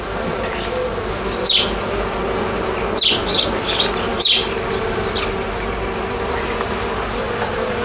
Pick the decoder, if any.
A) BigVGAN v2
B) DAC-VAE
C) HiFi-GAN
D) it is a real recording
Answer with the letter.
D